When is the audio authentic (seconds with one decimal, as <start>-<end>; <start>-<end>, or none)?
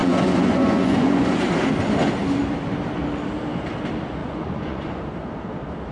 1.4-4.2; 5.0-5.9